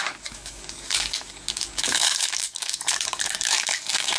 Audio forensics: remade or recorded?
remade